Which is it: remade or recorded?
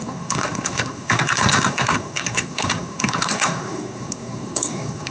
remade